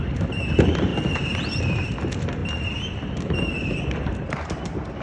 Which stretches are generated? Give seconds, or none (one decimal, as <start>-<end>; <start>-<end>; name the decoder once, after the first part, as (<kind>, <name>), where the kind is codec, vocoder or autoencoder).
0.0-0.9 (vocoder, BigVGAN v2); 1.6-2.4; 4.5-5.0